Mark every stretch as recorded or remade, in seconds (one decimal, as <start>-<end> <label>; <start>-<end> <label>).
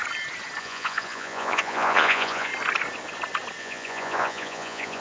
0.0-0.6 recorded; 0.6-2.5 remade; 2.5-3.6 recorded; 3.6-5.0 remade